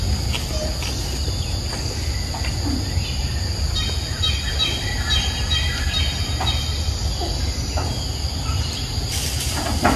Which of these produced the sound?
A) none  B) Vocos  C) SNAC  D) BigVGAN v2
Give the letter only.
A